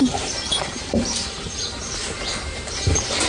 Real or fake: fake